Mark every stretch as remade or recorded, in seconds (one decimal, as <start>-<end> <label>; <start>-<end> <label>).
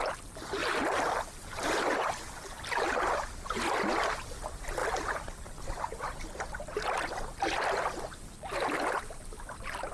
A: 0.0-0.6 recorded; 0.6-1.4 remade; 1.4-4.8 recorded; 4.8-6.4 remade; 6.4-9.9 recorded